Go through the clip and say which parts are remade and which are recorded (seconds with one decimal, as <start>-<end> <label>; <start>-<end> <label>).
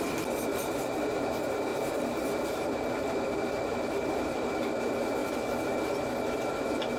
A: 0.0-0.5 recorded; 0.5-1.2 remade; 1.2-1.7 recorded; 1.7-4.5 remade; 4.5-7.0 recorded